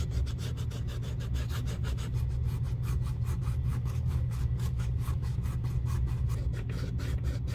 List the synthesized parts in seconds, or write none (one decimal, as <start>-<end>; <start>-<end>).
3.7-5.4